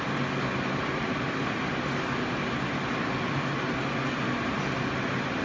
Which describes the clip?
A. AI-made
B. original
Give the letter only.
B